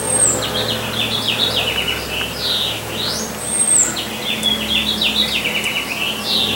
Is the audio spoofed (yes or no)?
no